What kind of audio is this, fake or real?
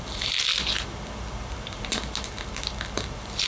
real